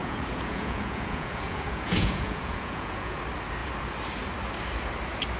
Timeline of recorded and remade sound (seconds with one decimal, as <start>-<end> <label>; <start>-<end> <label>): 0.0-3.2 remade; 3.2-5.4 recorded